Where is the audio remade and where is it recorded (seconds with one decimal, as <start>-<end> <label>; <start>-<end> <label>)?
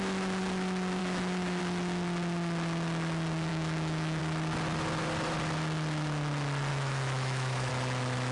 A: 0.0-1.0 recorded; 1.0-1.6 remade; 1.6-3.5 recorded; 3.5-4.2 remade; 4.2-6.7 recorded; 6.7-7.7 remade; 7.7-8.3 recorded